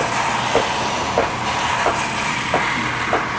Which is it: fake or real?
real